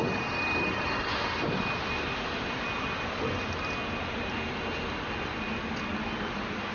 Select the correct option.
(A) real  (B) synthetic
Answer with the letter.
A